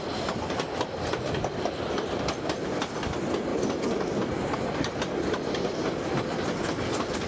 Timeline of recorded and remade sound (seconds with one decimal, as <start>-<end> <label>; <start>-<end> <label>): 0.0-7.3 recorded